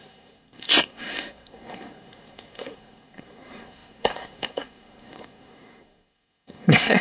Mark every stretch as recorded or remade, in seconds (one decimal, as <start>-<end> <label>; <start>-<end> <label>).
0.0-7.0 remade